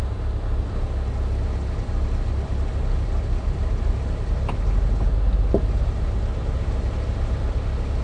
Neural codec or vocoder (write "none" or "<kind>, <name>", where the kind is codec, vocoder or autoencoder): none